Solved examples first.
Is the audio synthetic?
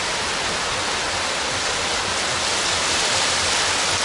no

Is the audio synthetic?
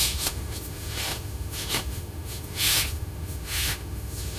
yes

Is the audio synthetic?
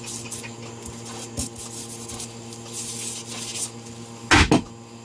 no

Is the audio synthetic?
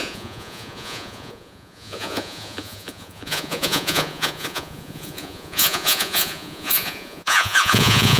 yes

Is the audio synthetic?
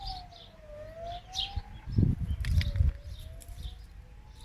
no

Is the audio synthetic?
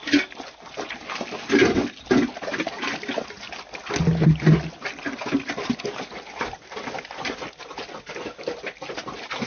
no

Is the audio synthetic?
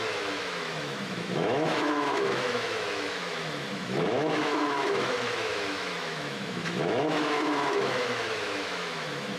yes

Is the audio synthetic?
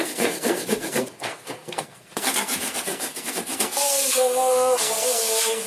yes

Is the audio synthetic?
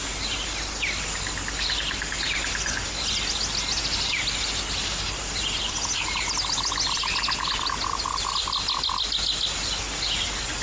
no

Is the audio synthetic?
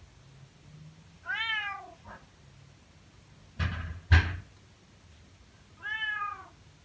no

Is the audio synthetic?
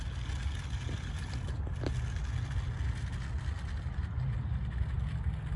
no